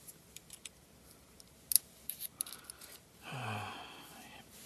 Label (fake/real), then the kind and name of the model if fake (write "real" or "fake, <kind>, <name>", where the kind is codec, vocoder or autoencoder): real